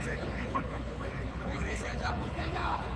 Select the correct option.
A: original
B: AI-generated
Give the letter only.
B